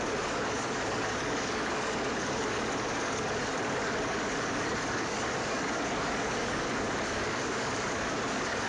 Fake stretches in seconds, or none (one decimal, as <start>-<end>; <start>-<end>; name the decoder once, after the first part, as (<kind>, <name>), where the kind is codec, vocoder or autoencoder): 0.0-8.7 (codec, DAC)